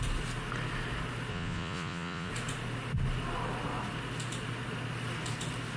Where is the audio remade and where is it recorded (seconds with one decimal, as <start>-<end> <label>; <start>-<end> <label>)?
0.0-1.3 recorded; 1.3-2.3 remade; 2.3-5.8 recorded